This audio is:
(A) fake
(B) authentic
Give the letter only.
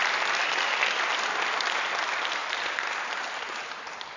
B